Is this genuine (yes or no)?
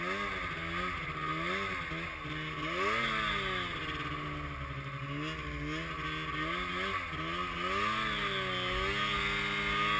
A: yes